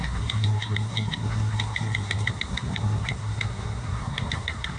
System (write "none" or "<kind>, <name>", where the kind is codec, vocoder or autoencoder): codec, SNAC